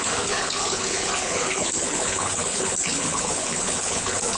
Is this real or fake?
fake